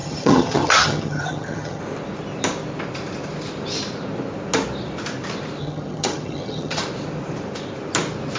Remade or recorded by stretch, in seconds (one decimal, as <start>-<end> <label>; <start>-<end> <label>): 0.0-1.8 remade; 1.8-5.6 recorded; 5.6-6.8 remade; 6.8-8.4 recorded